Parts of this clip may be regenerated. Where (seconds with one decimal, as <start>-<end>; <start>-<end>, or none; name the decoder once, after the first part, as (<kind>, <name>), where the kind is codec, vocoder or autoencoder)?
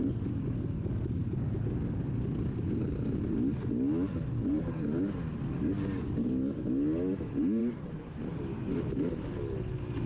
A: 4.4-5.0 (vocoder, BigVGAN v2); 7.6-8.4